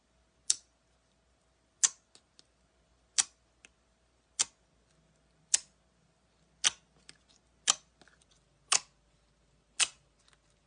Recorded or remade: recorded